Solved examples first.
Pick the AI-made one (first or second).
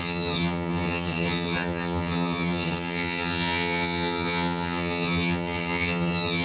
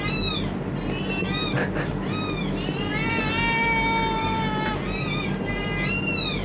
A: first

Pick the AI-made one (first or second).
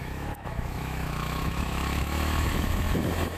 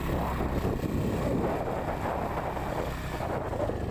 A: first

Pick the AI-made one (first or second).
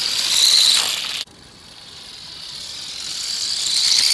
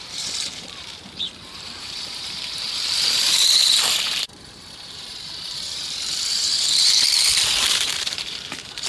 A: second